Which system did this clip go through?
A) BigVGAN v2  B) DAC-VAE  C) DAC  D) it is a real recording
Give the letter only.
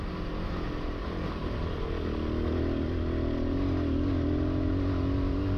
D